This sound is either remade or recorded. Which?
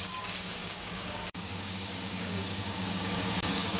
remade